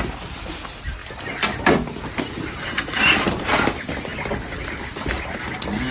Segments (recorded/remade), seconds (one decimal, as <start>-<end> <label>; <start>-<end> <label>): 0.0-5.9 recorded